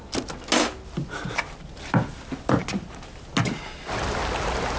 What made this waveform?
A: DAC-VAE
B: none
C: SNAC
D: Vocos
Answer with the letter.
B